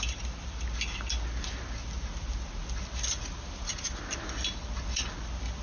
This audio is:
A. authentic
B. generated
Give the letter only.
A